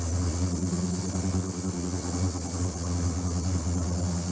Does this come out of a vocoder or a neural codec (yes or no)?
yes